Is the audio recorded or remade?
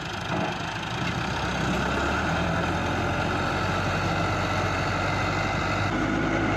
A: recorded